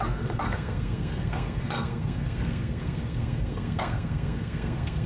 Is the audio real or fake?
fake